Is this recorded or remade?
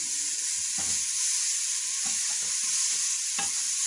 recorded